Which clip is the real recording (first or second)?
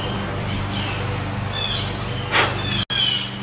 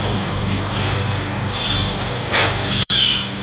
first